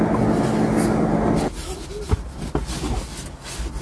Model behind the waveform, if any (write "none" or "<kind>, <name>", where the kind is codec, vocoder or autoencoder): none